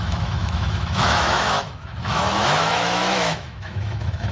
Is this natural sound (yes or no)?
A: no